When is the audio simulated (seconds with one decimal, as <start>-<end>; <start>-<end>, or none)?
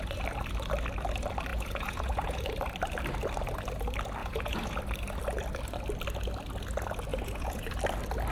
1.5-2.4; 4.2-4.8; 7.1-7.7